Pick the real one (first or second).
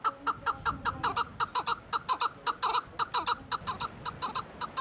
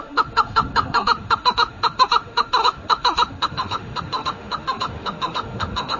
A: first